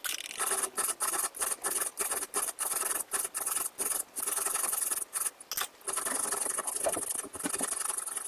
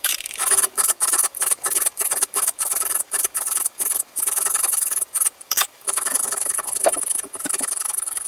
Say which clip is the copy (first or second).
second